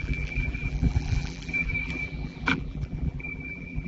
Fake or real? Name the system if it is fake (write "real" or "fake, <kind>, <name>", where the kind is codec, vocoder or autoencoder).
fake, vocoder, BigVGAN v2